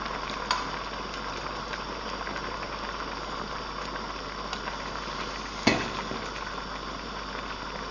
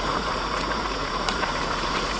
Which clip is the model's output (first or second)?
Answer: second